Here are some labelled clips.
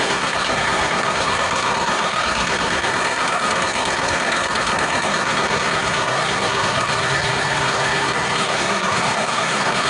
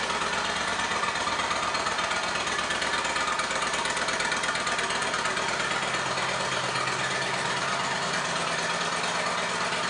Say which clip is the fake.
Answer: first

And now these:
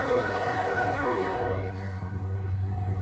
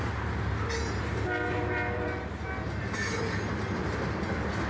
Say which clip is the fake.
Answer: first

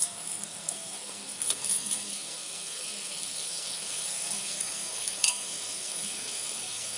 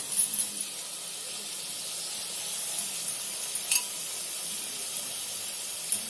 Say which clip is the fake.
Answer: first